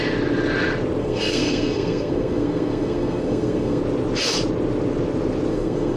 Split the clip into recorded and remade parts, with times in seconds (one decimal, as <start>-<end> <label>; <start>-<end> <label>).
0.0-1.0 recorded; 1.0-3.8 remade; 3.8-5.5 recorded; 5.5-6.0 remade